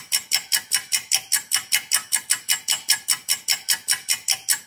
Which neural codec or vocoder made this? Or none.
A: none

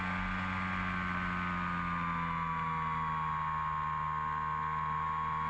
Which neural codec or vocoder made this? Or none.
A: none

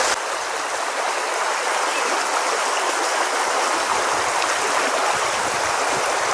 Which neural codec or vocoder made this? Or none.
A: none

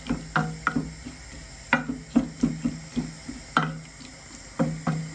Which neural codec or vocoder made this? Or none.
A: none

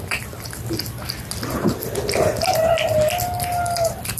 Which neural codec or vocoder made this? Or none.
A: none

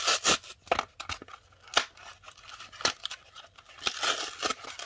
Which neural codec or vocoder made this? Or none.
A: none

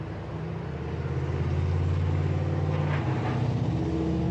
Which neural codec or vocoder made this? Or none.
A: none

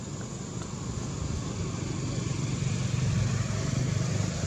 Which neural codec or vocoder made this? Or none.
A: none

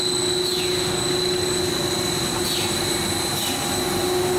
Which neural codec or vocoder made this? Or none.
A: none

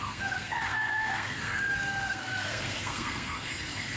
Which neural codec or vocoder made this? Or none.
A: codec, SNAC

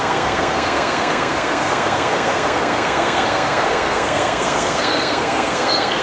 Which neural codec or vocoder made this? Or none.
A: codec, SNAC